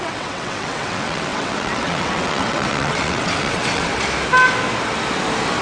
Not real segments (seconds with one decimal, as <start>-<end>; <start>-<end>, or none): 0.0-3.9